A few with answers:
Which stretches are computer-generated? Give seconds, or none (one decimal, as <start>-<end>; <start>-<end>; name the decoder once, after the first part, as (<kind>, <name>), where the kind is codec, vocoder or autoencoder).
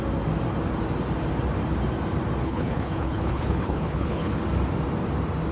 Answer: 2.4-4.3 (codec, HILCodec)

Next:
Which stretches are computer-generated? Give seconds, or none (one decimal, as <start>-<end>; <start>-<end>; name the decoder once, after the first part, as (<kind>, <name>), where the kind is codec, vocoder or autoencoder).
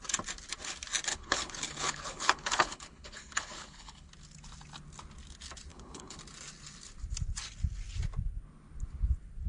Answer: 1.1-4.1 (codec, HILCodec); 5.7-6.2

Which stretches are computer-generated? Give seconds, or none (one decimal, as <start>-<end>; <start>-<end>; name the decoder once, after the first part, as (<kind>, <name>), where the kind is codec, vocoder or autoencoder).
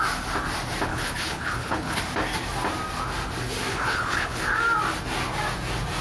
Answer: 0.9-2.0 (codec, HILCodec); 3.7-4.4